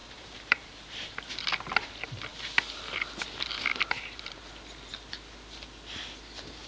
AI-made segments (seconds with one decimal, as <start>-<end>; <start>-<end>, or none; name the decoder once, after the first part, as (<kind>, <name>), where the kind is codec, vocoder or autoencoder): 0.0-1.2 (vocoder, BigVGAN v2); 3.7-4.5